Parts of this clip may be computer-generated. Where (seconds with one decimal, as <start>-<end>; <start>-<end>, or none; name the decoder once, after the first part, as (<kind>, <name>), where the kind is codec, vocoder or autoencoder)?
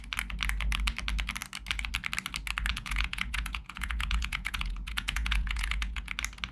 2.7-6.1 (vocoder, Vocos)